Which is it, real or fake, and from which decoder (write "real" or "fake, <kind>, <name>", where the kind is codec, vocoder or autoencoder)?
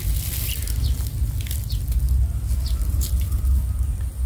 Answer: real